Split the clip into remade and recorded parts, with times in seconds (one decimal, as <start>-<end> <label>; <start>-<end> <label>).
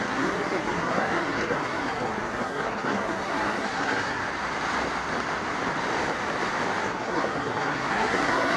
0.0-4.2 remade; 4.2-6.8 recorded; 6.8-8.6 remade